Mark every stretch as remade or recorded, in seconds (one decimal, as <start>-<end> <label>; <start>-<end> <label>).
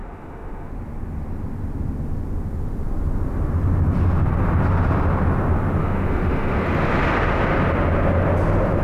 0.0-0.7 remade; 0.7-5.8 recorded; 5.8-6.6 remade; 6.6-8.8 recorded